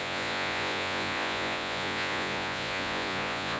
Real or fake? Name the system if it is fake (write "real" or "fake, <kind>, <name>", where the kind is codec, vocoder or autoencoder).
fake, vocoder, Vocos